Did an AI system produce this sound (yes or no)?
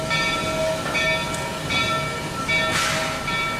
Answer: no